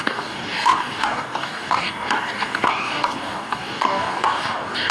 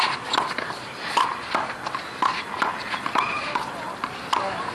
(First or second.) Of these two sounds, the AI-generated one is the first